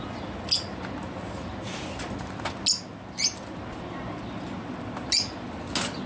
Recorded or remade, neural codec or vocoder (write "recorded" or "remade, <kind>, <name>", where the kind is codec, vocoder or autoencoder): recorded